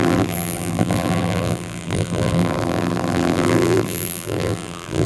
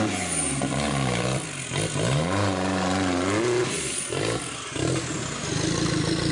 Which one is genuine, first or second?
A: second